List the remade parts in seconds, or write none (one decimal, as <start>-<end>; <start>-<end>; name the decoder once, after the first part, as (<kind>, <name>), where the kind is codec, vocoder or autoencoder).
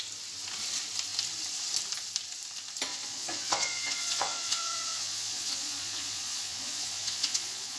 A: 2.9-7.8 (vocoder, Vocos)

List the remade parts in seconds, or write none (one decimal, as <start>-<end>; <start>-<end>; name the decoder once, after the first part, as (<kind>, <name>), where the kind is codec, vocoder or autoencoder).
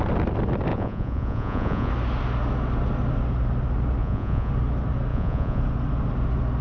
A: 0.7-1.9 (vocoder, Vocos); 4.0-4.5; 5.1-5.6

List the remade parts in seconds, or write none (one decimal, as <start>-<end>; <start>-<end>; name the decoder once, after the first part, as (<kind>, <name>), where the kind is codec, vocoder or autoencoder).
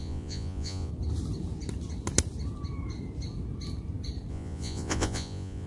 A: 0.0-0.9 (vocoder, Vocos); 4.3-5.7